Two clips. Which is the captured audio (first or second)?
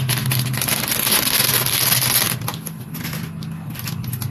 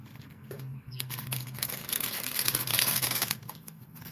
first